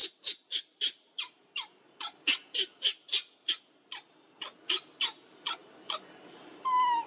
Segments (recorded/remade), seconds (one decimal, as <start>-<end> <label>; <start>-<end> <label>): 0.0-7.1 recorded